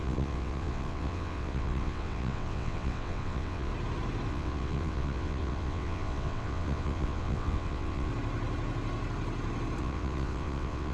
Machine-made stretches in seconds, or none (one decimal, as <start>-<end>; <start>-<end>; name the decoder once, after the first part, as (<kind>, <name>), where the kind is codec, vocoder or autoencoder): 0.0-3.7 (vocoder, WaveNeXt); 4.3-8.1; 9.8-10.9